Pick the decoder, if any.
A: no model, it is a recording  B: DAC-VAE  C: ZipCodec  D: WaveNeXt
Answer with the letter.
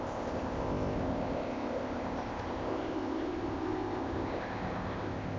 C